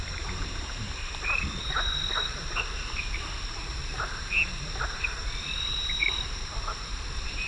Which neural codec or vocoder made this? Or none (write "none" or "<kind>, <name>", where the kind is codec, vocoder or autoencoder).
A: vocoder, BigVGAN v2